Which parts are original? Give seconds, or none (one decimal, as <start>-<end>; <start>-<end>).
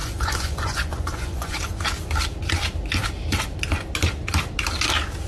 1.6-5.3